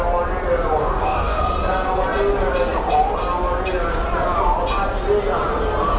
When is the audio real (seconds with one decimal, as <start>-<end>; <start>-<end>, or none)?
0.0-0.8; 1.4-6.0